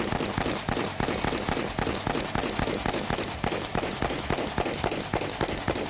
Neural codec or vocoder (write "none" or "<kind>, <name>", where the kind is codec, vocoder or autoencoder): none